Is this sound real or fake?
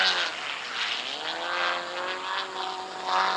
real